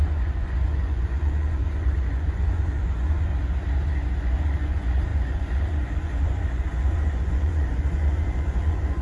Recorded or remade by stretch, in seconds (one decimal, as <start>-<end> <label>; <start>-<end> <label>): 0.0-3.3 remade; 3.3-4.2 recorded; 4.2-9.0 remade